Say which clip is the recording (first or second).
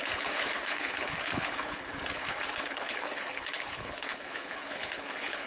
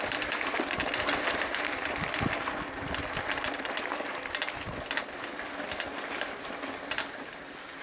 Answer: second